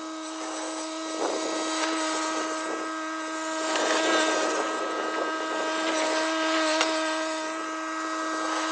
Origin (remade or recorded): recorded